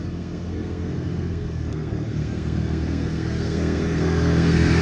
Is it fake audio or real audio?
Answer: fake